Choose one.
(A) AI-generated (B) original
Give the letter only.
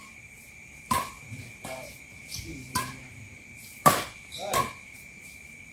A